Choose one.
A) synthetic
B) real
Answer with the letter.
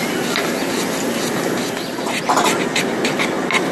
B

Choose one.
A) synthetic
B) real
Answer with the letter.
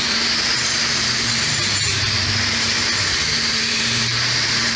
A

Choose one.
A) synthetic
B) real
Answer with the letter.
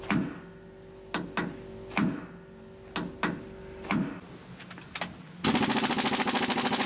B